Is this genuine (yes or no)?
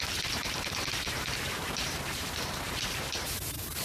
no